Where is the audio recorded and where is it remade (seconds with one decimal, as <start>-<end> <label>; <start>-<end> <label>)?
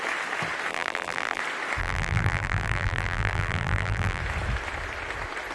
0.0-0.7 recorded; 0.7-1.4 remade; 1.4-1.8 recorded; 1.8-4.2 remade; 4.2-5.5 recorded